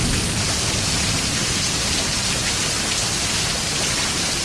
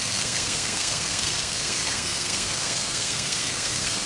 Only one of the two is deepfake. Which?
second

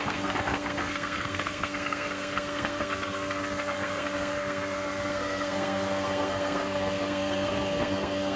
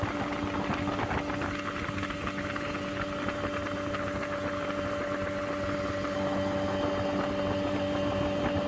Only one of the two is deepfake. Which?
first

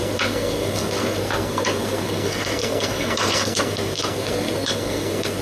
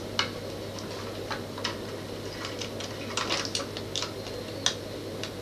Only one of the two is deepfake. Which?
first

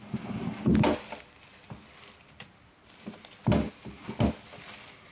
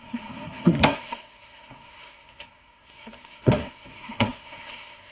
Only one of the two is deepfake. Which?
second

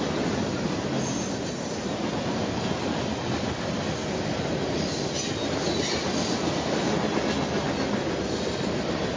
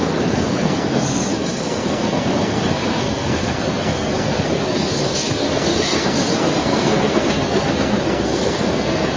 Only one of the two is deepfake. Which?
second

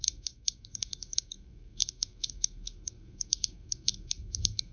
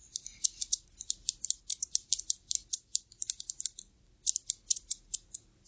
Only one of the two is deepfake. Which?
first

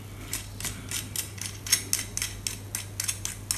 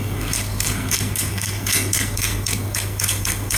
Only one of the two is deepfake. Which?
second